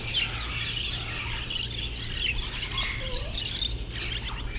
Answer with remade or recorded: recorded